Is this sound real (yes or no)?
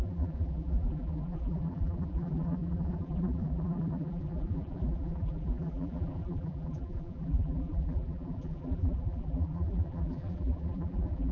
no